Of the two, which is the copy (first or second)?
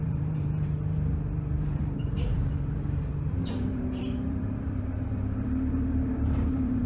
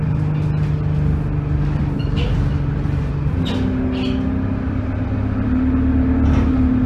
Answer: first